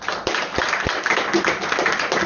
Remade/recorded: recorded